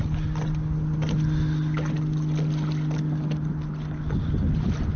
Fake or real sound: real